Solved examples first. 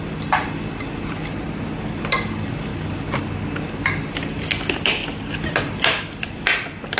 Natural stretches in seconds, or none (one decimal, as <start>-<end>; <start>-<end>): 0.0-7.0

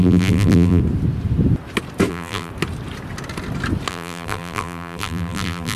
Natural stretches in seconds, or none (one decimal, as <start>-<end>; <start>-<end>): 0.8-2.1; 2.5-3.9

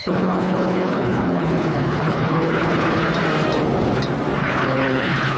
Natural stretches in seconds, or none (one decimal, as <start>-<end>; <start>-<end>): 3.1-4.4